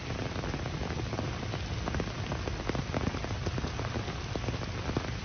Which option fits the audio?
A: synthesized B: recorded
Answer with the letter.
B